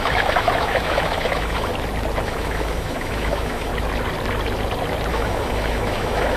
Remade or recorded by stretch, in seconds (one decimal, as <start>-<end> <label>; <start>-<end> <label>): 0.0-1.7 remade; 1.7-2.2 recorded; 2.2-3.7 remade; 3.7-5.1 recorded; 5.1-6.4 remade